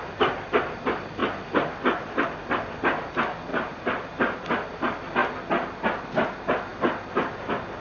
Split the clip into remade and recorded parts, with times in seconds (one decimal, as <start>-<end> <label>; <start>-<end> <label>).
0.0-3.5 recorded; 3.5-4.4 remade; 4.4-7.8 recorded